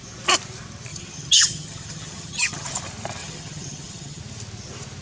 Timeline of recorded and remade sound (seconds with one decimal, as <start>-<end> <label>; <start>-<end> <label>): 0.0-0.9 recorded; 0.9-2.8 remade; 2.8-3.2 recorded; 3.2-4.2 remade; 4.2-5.0 recorded